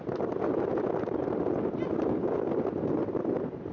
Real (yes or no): yes